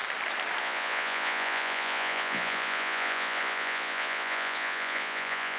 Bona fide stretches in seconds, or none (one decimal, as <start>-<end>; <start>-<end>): 0.0-0.6